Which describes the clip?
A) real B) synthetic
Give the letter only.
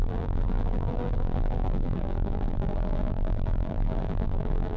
B